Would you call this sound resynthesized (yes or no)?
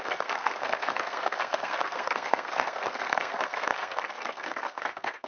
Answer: yes